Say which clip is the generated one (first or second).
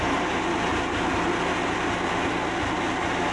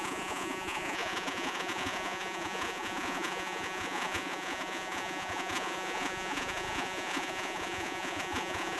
second